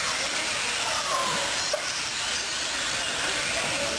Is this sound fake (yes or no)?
no